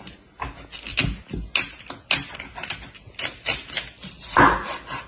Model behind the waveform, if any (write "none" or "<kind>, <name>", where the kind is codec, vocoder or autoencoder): none